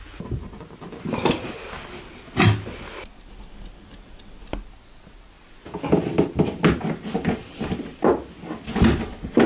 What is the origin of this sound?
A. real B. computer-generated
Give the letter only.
A